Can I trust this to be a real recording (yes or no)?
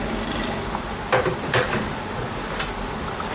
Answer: yes